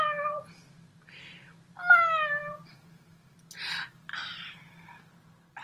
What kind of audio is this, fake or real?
real